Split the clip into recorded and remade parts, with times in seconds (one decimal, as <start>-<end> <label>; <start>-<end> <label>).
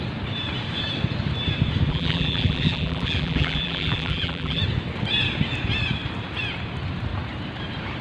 0.0-1.9 recorded; 1.9-4.6 remade; 4.6-8.0 recorded